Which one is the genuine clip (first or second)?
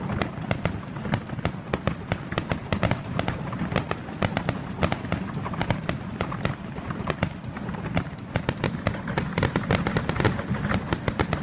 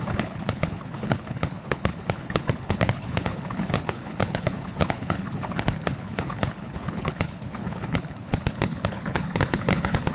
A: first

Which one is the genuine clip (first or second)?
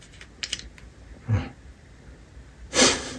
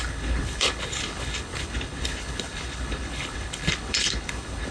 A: first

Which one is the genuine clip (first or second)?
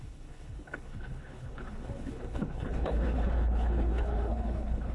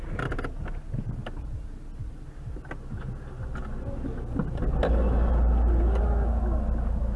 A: second